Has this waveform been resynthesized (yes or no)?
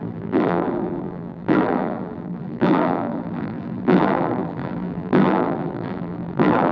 yes